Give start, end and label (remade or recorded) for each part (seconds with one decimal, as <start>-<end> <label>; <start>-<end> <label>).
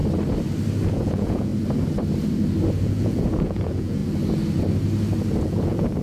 0.0-0.9 recorded; 0.9-1.5 remade; 1.5-2.8 recorded; 2.8-4.0 remade; 4.0-5.4 recorded; 5.4-6.0 remade